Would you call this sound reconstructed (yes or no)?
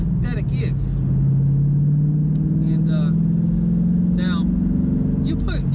no